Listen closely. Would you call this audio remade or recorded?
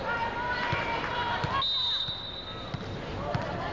recorded